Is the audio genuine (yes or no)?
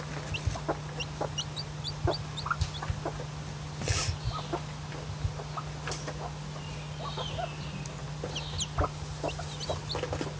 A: yes